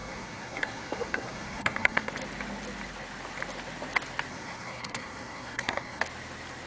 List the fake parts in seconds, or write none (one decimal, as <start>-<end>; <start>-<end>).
0.0-2.1; 4.3-6.0